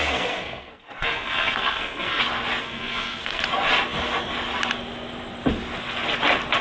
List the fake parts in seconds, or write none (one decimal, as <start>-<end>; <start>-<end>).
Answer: 0.0-2.2; 2.6-3.4